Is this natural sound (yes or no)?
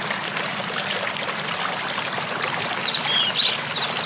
yes